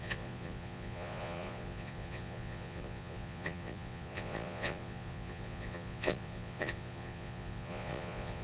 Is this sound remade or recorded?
remade